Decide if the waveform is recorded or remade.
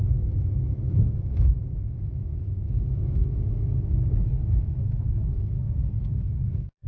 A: remade